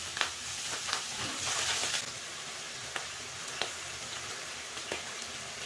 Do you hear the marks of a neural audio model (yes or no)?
no